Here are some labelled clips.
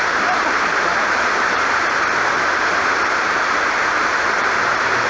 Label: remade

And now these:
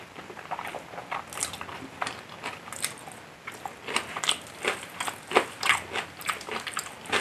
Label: recorded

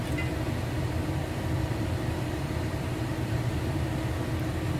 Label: recorded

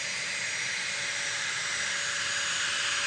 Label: recorded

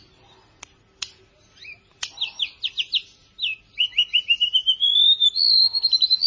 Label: recorded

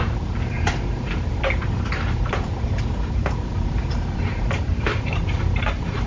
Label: remade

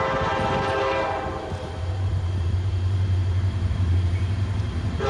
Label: remade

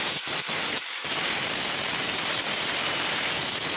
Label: remade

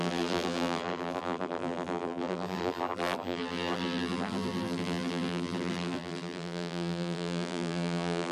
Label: remade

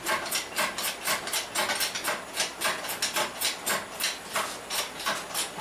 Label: recorded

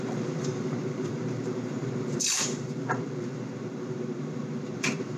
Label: remade